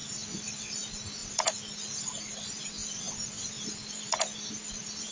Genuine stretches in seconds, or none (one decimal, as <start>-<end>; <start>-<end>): 0.0-5.1

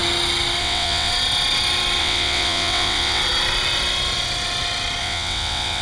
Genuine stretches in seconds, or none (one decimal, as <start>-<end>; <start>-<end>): 0.0-0.6; 1.1-2.0; 3.2-5.0